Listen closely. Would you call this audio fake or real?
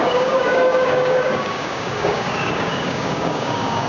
fake